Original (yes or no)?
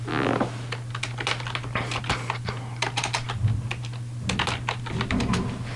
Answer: yes